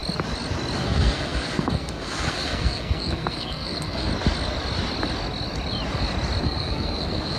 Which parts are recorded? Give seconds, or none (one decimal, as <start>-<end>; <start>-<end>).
0.0-0.8; 4.1-6.4